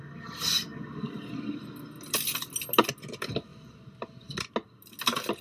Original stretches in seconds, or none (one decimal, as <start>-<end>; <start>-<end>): 0.0-5.4